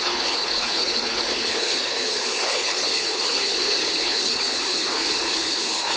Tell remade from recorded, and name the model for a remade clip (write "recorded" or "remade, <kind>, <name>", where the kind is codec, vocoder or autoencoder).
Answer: remade, codec, HILCodec